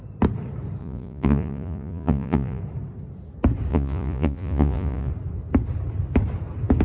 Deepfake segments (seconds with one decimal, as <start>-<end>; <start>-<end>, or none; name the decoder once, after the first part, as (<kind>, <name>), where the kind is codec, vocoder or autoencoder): 0.8-2.6 (vocoder, Vocos); 3.7-5.1